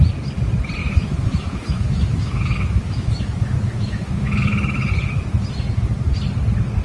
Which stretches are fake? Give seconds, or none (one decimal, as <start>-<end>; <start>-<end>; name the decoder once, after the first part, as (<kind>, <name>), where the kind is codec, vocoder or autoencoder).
0.8-4.9 (autoencoder, DAC-VAE)